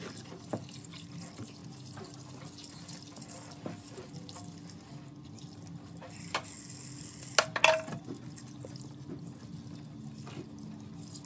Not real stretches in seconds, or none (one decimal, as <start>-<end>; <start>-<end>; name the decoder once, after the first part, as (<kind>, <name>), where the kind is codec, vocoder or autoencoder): none